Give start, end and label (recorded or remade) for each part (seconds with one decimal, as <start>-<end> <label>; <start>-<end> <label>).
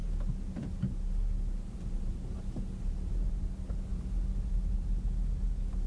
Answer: 0.0-5.9 recorded